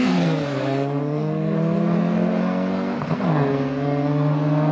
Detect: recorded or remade remade